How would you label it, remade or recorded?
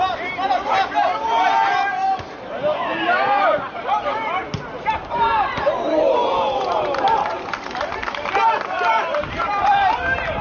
remade